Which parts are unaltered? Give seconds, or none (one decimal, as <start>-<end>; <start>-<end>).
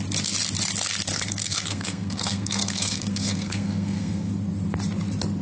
0.0-1.1; 4.3-5.4